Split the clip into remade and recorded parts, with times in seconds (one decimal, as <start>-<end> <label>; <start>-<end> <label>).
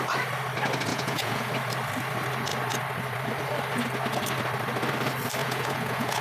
0.0-0.9 recorded; 0.9-1.5 remade; 1.5-5.4 recorded; 5.4-6.2 remade